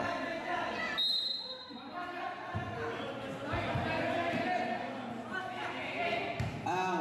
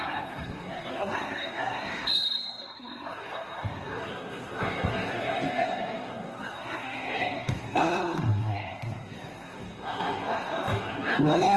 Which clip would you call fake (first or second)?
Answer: second